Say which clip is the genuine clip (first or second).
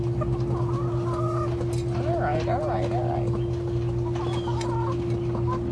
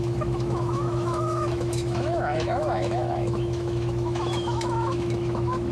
first